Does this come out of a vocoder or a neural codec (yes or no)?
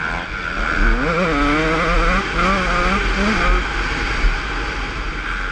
no